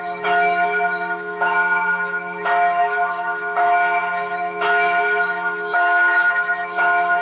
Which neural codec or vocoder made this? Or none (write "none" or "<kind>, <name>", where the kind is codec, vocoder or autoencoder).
autoencoder, DAC-VAE